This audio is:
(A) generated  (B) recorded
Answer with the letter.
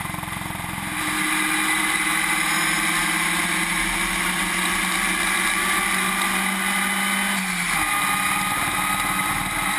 B